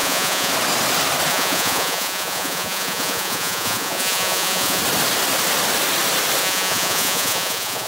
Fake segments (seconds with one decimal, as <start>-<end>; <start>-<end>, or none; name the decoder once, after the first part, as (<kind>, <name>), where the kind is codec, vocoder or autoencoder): 0.0-0.5 (vocoder, Vocos); 1.3-4.8; 6.4-7.9